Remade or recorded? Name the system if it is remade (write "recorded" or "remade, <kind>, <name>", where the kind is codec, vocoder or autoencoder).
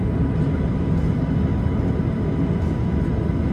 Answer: recorded